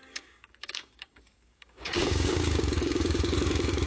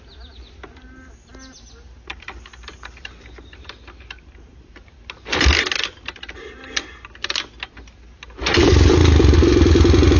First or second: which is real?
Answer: second